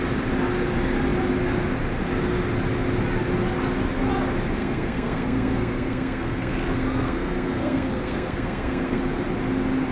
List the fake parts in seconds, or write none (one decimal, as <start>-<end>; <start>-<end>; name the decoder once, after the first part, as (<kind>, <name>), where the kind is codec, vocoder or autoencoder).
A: 4.6-9.0 (codec, SNAC)